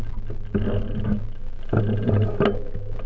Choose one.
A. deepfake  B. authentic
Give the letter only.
B